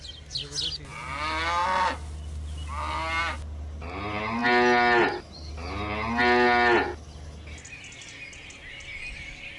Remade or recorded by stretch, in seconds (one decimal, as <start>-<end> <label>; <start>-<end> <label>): 0.0-8.6 recorded; 8.6-9.2 remade; 9.2-9.6 recorded